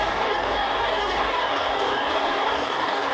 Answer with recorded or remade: remade